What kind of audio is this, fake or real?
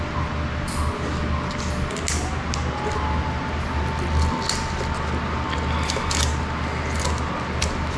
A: real